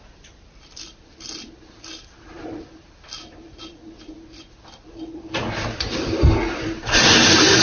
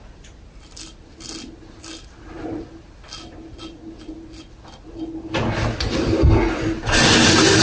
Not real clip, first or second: first